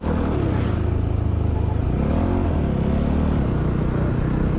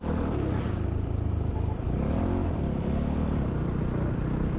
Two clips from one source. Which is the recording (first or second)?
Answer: first